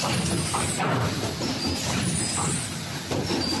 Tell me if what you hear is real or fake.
real